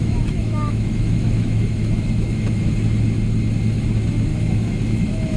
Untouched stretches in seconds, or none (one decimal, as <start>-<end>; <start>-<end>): 2.7-4.3